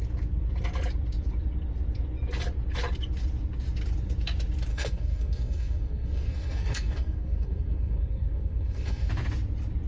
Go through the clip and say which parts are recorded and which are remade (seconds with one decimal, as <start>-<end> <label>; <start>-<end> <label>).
0.0-4.7 recorded; 4.7-9.1 remade; 9.1-9.9 recorded

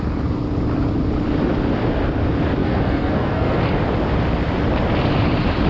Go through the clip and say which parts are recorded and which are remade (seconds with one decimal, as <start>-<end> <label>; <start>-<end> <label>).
0.0-2.6 recorded; 2.6-3.6 remade; 3.6-5.7 recorded

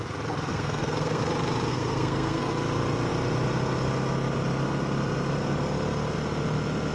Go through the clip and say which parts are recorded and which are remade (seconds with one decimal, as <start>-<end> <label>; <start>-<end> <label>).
0.0-0.5 recorded; 0.5-1.2 remade; 1.2-1.7 recorded; 1.7-2.5 remade; 2.5-6.9 recorded

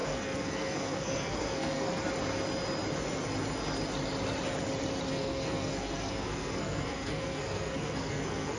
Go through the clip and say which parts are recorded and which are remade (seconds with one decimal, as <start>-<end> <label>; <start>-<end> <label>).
0.0-2.0 remade; 2.0-5.1 recorded; 5.1-8.6 remade

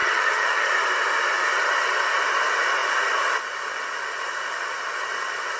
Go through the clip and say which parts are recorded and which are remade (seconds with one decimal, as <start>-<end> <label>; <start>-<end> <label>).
0.0-0.7 remade; 0.7-5.6 recorded

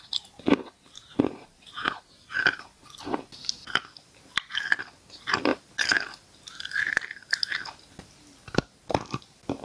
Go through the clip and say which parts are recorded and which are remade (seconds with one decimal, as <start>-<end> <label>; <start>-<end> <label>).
0.0-9.6 recorded

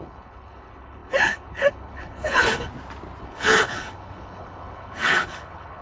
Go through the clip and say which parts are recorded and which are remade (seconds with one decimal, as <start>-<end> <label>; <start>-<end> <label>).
0.0-2.7 remade; 2.7-3.2 recorded; 3.2-5.8 remade